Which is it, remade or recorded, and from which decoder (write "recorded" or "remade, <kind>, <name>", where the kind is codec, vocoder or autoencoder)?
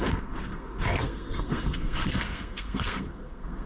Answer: remade, codec, SNAC